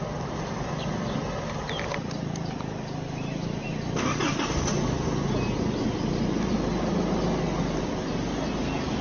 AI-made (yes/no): no